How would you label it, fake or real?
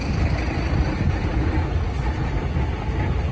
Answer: real